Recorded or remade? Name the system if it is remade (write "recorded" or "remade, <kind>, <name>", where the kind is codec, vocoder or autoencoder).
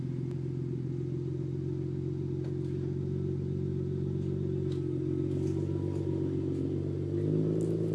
recorded